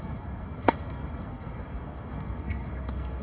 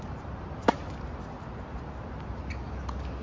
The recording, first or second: second